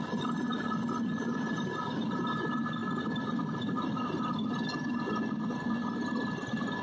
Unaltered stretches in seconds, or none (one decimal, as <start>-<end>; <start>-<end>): 0.0-6.8